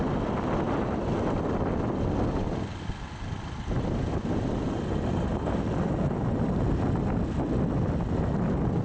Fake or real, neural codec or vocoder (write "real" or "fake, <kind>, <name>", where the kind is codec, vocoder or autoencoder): real